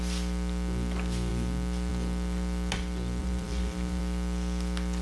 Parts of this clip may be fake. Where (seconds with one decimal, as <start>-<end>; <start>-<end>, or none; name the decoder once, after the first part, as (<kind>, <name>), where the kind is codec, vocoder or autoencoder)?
3.2-4.0 (vocoder, BigVGAN v2)